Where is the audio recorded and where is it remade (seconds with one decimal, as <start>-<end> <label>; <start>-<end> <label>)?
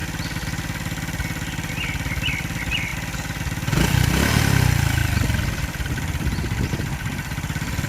0.0-1.7 recorded; 1.7-2.9 remade; 2.9-4.4 recorded; 4.4-7.9 remade